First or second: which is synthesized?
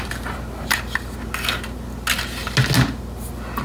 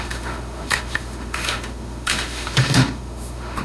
second